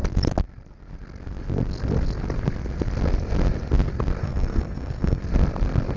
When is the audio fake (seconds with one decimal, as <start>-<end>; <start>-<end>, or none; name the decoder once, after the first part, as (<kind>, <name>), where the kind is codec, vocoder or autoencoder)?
4.2-5.2 (codec, SNAC)